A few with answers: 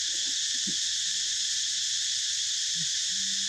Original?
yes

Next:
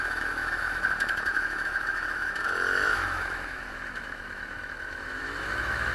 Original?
no